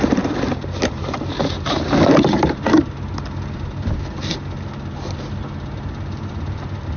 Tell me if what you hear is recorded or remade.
recorded